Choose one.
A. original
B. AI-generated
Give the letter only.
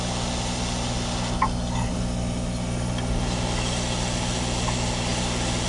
A